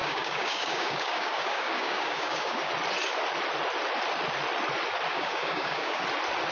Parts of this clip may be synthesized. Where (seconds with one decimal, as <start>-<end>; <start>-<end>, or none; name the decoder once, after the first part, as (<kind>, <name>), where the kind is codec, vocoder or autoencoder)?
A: 0.0-2.7 (codec, DAC); 5.1-6.0